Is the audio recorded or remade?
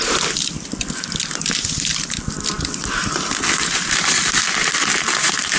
recorded